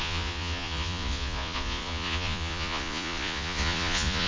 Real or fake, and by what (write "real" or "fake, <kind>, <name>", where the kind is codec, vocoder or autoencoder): fake, vocoder, Vocos